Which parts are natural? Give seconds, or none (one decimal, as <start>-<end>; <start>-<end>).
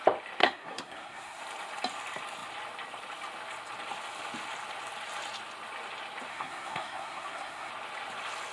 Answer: 0.0-0.4; 1.4-6.3; 7.7-8.5